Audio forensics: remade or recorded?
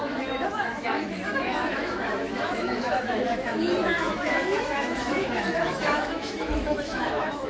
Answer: remade